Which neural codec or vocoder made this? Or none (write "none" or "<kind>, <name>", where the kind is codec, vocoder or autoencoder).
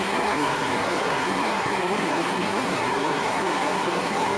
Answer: codec, SNAC